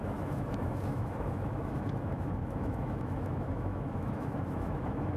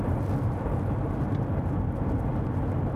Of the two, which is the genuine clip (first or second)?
second